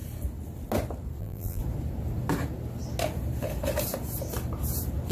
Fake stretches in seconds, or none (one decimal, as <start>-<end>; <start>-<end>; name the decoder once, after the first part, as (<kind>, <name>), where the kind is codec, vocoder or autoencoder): 1.2-1.6 (vocoder, BigVGAN v2)